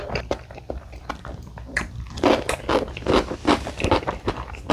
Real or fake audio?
fake